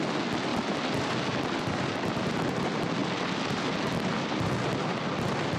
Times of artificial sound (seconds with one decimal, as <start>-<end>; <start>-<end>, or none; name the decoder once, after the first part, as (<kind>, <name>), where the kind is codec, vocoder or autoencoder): 0.5-1.6 (vocoder, BigVGAN v2); 3.0-4.6